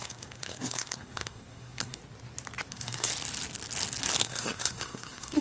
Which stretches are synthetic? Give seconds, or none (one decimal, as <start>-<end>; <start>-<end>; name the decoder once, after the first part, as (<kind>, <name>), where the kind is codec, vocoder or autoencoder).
0.0-2.0 (codec, SNAC); 2.7-3.1; 4.2-5.4